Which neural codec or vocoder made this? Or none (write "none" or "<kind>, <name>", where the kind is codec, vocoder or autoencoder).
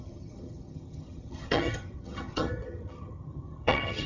vocoder, HiFi-GAN